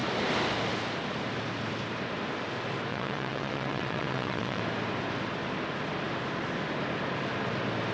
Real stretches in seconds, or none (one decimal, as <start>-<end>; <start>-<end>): 0.0-2.9; 4.6-7.9